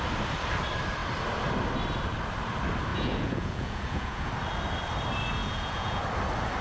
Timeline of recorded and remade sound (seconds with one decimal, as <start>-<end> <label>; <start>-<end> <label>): 0.0-2.9 recorded; 2.9-4.3 remade; 4.3-5.4 recorded; 5.4-6.0 remade; 6.0-6.6 recorded